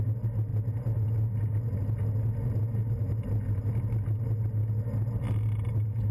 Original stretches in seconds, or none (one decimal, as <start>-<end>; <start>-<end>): 0.0-6.1